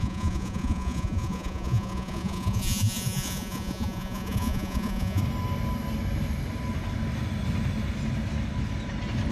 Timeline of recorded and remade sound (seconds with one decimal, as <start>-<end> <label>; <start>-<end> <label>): 0.0-5.2 remade; 5.2-9.3 recorded